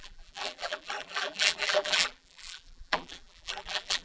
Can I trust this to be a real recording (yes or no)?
no